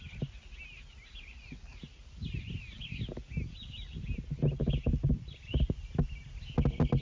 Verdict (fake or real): real